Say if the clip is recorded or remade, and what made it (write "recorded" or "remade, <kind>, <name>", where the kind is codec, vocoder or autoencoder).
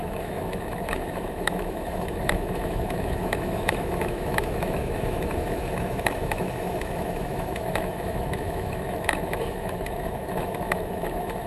remade, autoencoder, DAC-VAE